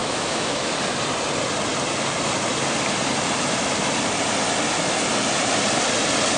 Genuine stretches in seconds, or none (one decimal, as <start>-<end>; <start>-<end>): 0.7-6.4